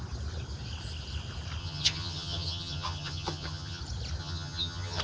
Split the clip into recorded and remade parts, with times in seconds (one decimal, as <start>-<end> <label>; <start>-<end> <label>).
0.0-1.6 recorded; 1.6-3.8 remade; 3.8-4.2 recorded; 4.2-5.0 remade